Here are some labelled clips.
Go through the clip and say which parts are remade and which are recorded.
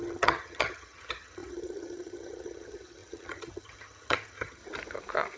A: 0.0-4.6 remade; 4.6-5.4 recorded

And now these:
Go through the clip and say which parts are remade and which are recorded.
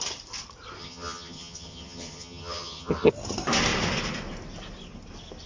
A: 0.0-0.8 recorded; 0.8-3.1 remade; 3.1-5.5 recorded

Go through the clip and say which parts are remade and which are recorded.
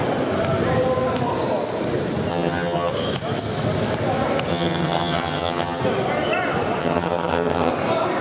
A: 0.0-2.3 recorded; 2.3-2.9 remade; 2.9-4.5 recorded; 4.5-5.8 remade; 5.8-6.8 recorded; 6.8-7.7 remade; 7.7-8.2 recorded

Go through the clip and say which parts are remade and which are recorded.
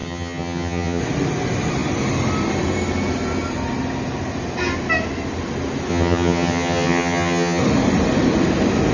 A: 0.0-1.0 remade; 1.0-5.9 recorded; 5.9-7.6 remade; 7.6-8.9 recorded